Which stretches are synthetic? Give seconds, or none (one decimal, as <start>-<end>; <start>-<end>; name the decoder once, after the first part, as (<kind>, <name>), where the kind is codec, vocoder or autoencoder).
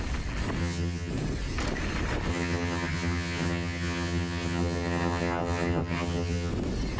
0.6-1.1 (vocoder, HiFi-GAN); 2.3-6.5